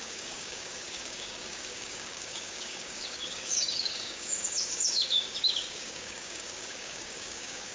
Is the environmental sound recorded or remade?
remade